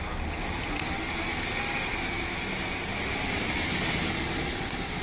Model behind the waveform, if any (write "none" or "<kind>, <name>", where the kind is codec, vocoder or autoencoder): none